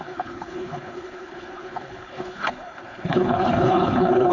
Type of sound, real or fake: fake